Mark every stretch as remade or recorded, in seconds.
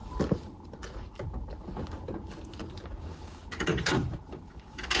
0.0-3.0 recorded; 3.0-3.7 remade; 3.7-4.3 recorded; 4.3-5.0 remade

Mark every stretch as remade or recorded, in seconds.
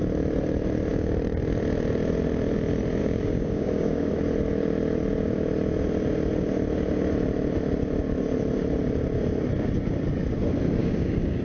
0.0-3.0 recorded; 3.0-4.1 remade; 4.1-10.8 recorded; 10.8-11.4 remade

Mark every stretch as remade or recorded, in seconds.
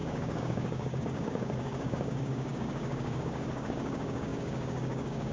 0.0-5.3 remade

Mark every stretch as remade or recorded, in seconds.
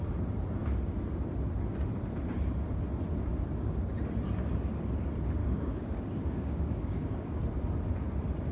0.0-5.4 recorded; 5.4-7.4 remade; 7.4-8.5 recorded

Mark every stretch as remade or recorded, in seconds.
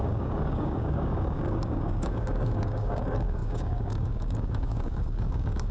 0.0-5.7 remade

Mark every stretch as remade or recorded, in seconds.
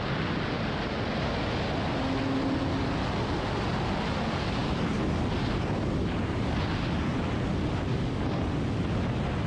0.0-7.9 recorded; 7.9-8.4 remade; 8.4-9.5 recorded